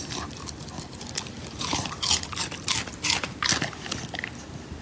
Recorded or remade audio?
remade